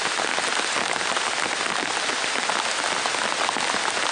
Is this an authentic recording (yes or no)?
yes